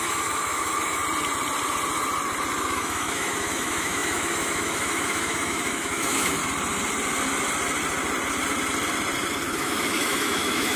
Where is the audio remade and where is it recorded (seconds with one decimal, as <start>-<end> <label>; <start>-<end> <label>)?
0.0-1.0 remade; 1.0-2.6 recorded; 2.6-6.4 remade; 6.4-9.5 recorded; 9.5-10.8 remade